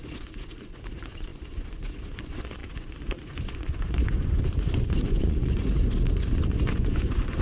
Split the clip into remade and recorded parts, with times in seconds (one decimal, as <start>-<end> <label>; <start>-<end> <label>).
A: 0.0-7.4 remade